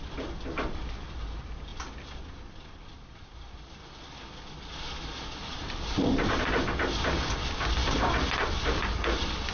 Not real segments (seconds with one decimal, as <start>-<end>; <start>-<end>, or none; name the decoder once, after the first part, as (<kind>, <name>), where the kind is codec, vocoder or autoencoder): 5.4-6.6 (vocoder, BigVGAN v2)